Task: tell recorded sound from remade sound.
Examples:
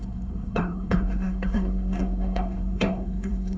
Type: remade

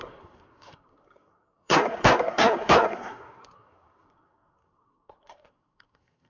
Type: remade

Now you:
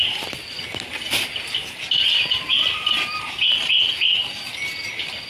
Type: recorded